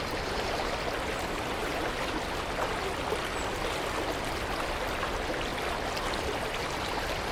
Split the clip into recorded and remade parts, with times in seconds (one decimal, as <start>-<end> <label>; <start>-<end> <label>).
0.0-5.5 recorded; 5.5-6.2 remade; 6.2-7.3 recorded